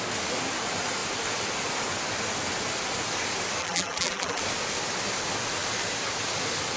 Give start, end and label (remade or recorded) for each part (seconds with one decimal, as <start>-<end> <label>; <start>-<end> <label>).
0.0-3.6 recorded; 3.6-4.4 remade; 4.4-6.8 recorded